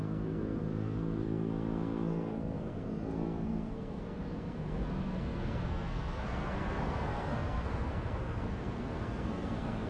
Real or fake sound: fake